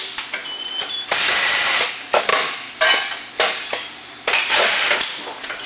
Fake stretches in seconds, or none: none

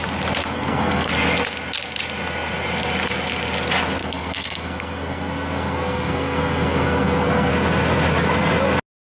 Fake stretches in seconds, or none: 0.4-1.1 (codec, SNAC); 4.0-7.5

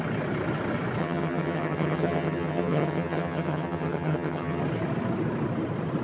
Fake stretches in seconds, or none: 1.0-4.6 (vocoder, HiFi-GAN)